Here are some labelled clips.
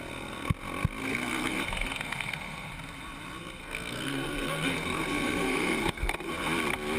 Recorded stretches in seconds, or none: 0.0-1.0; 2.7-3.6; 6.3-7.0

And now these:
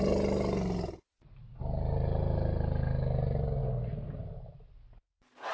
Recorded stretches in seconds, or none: 0.0-5.5

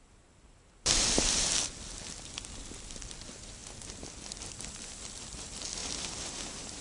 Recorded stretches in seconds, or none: 3.6-4.5